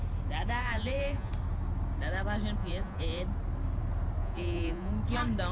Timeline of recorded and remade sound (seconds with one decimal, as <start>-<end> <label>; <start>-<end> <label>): 0.0-0.6 recorded; 0.6-1.3 remade; 1.3-2.6 recorded; 2.6-3.2 remade; 3.2-4.2 recorded; 4.2-4.9 remade; 4.9-5.5 recorded